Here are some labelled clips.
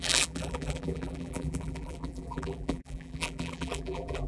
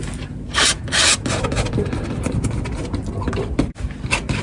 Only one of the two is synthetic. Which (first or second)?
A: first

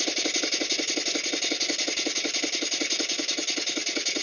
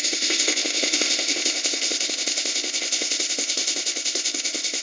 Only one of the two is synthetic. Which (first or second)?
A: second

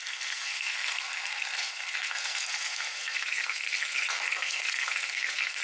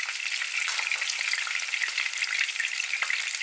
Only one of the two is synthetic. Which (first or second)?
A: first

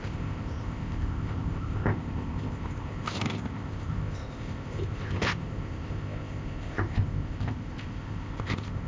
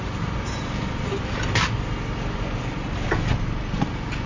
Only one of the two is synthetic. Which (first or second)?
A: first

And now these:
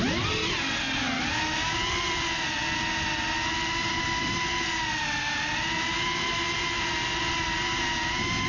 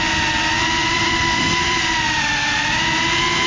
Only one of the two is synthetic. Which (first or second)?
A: second